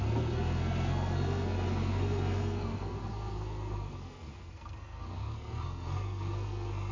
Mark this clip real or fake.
fake